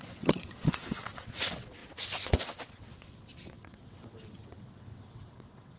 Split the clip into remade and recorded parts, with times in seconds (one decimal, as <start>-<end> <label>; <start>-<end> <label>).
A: 0.0-5.8 remade